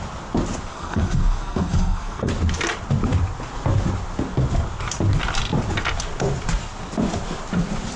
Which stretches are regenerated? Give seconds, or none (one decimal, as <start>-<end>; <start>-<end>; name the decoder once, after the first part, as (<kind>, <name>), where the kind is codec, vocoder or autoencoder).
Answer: 0.7-2.3 (codec, SNAC)